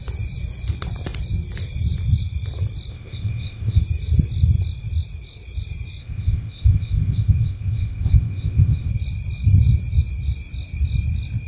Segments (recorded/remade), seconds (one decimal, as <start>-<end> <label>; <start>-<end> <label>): 0.0-2.9 recorded; 2.9-3.8 remade; 3.8-6.0 recorded; 6.0-8.9 remade; 8.9-11.5 recorded